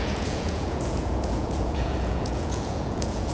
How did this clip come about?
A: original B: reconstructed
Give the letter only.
B